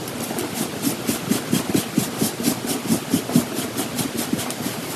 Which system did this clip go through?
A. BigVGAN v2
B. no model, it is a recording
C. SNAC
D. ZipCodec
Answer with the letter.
B